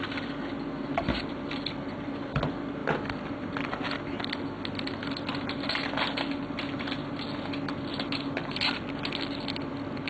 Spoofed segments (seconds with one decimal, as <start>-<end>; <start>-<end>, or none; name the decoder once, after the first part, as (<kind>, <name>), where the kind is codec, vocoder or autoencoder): none